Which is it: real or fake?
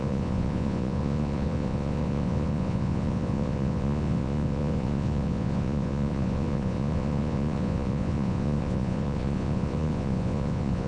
fake